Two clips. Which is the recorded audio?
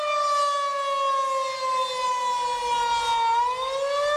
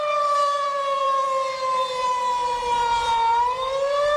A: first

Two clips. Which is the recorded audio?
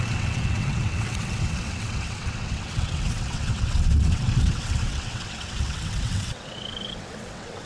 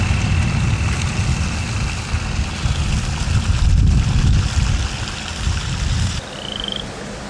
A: second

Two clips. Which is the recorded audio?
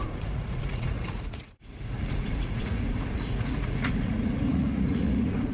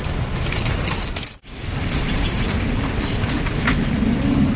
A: second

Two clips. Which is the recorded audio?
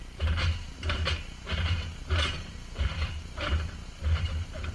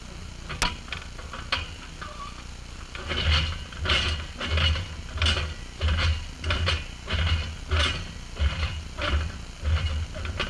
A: second